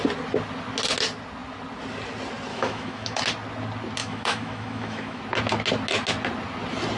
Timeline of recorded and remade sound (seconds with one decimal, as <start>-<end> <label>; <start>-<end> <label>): 0.0-2.5 recorded; 2.5-3.2 remade; 3.2-4.0 recorded; 4.0-5.2 remade; 5.2-7.0 recorded